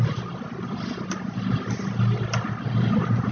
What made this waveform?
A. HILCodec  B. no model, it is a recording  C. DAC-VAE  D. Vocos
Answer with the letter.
B